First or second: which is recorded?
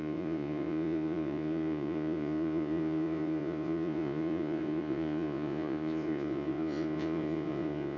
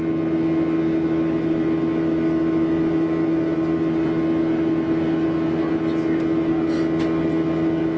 second